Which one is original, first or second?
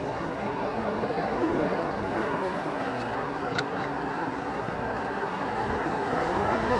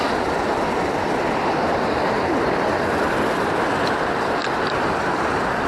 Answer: second